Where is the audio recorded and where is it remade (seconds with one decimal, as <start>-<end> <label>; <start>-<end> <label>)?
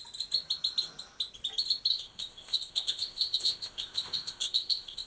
0.0-1.9 recorded; 1.9-5.1 remade